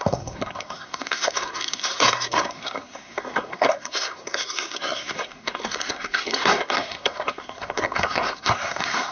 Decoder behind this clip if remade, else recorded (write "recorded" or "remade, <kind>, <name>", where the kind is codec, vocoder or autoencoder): remade, codec, SNAC